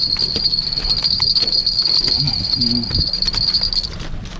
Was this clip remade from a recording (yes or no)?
no